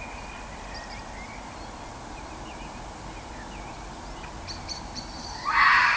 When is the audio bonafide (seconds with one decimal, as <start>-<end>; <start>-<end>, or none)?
0.0-6.0